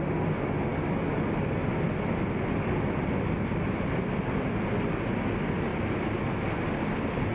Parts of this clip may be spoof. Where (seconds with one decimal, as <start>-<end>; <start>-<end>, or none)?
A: none